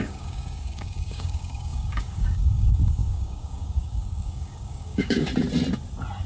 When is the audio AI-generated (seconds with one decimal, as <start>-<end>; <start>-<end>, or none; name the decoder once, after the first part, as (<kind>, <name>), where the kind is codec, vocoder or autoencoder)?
0.0-5.3 (codec, DAC)